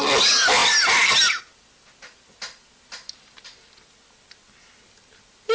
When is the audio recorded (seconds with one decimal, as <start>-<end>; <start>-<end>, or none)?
0.0-5.5